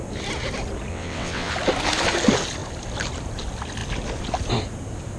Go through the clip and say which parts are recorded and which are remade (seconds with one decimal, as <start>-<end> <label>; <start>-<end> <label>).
0.0-0.9 recorded; 0.9-1.5 remade; 1.5-5.2 recorded